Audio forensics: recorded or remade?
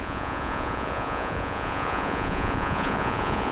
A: remade